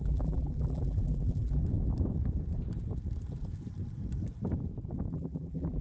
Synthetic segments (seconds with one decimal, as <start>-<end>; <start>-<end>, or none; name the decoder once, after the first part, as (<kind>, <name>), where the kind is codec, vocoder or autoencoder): 0.0-1.6 (vocoder, BigVGAN v2); 5.1-5.8